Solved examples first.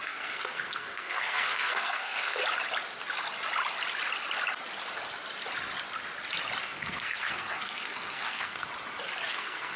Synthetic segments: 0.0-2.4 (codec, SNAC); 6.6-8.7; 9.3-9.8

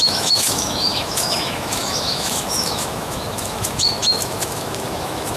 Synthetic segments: 0.0-5.4 (autoencoder, DAC-VAE)

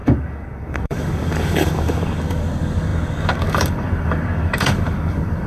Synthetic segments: 0.0-5.5 (codec, DAC)

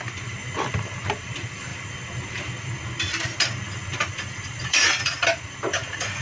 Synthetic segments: 0.0-1.7 (vocoder, BigVGAN v2); 4.0-6.2

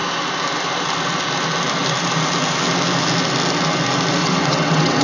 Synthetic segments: 4.2-5.0 (vocoder, WaveNeXt)

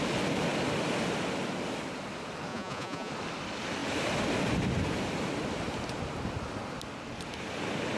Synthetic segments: 2.5-3.1 (vocoder, Vocos)